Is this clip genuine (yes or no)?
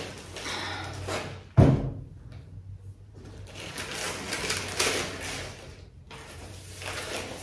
yes